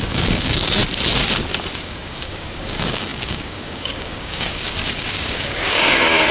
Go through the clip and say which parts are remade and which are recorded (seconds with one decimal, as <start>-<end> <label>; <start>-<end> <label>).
0.0-0.8 remade; 0.8-1.8 recorded; 1.8-6.3 remade